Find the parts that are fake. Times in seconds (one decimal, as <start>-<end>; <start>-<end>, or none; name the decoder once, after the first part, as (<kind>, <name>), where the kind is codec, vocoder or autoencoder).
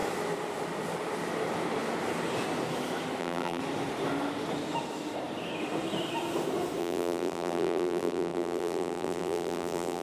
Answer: 3.2-3.6 (vocoder, BigVGAN v2); 6.8-10.0